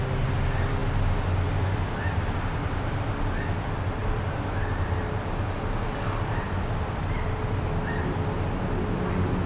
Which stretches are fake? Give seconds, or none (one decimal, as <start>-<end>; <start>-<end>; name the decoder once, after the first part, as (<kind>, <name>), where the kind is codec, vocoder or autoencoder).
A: none

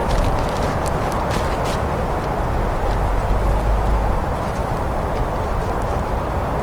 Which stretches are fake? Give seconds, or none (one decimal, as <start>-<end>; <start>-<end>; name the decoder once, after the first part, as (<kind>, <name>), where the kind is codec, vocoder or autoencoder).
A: 4.6-6.6 (vocoder, BigVGAN v2)

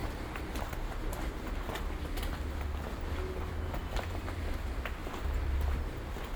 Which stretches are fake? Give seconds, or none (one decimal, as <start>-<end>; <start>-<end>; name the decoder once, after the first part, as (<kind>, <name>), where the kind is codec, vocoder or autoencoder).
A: 5.0-5.8 (vocoder, BigVGAN v2)

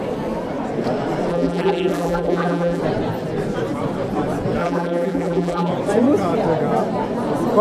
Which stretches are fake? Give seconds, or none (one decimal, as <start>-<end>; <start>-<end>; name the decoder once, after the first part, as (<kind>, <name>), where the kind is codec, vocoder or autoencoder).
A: 1.3-2.8 (vocoder, BigVGAN v2); 4.6-5.7